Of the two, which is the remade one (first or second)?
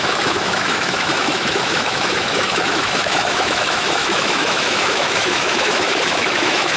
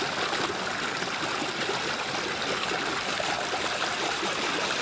first